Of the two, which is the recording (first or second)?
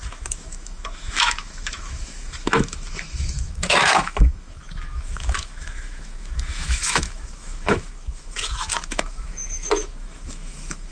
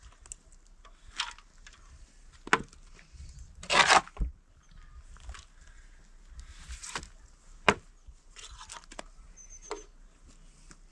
second